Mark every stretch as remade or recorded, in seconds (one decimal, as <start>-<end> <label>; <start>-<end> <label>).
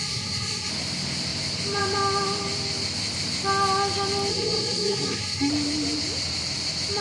0.0-0.7 remade; 0.7-4.3 recorded; 4.3-5.5 remade; 5.5-7.0 recorded